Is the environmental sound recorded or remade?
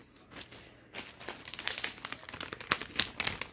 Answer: recorded